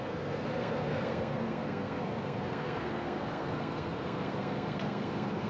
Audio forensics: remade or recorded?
remade